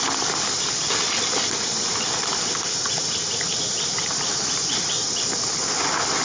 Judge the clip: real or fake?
real